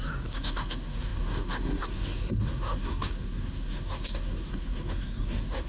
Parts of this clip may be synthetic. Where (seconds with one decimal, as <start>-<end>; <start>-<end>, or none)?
0.0-5.7